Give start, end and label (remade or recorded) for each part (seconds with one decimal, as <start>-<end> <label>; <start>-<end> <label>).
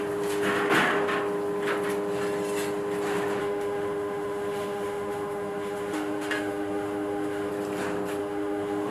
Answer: 0.0-3.4 recorded; 3.4-7.5 remade; 7.5-8.2 recorded; 8.2-8.9 remade